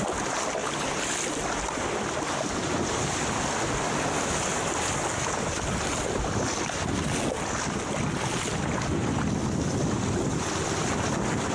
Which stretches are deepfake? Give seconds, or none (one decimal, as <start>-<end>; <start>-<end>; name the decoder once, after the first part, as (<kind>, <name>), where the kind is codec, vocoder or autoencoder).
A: 0.6-2.5 (vocoder, BigVGAN v2)